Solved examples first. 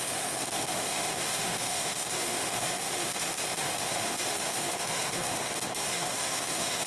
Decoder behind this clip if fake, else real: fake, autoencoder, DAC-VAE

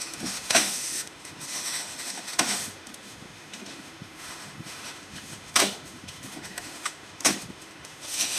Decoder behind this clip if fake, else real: fake, autoencoder, DAC-VAE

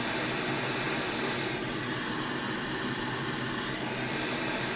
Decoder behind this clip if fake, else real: real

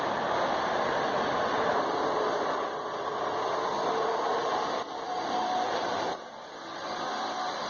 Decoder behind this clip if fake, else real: real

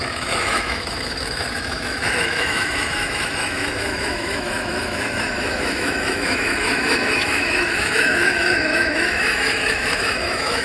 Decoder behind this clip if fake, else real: fake, autoencoder, DAC-VAE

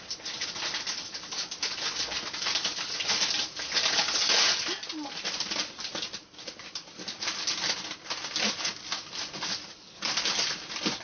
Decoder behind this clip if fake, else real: real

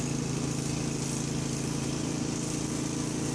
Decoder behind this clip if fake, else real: real